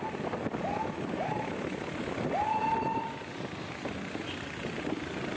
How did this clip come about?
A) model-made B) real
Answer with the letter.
B